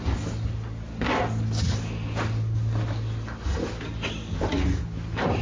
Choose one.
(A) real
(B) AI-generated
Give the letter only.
A